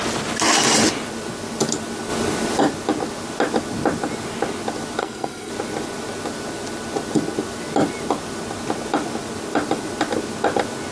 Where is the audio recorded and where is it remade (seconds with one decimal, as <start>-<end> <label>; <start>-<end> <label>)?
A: 0.0-5.0 recorded; 5.0-5.5 remade; 5.5-10.9 recorded